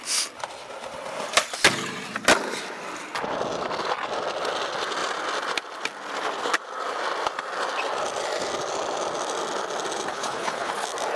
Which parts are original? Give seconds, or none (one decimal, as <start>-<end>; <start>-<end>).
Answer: 0.0-10.1; 10.7-11.2